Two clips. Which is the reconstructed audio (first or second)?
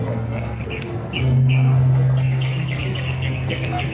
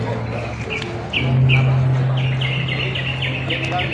first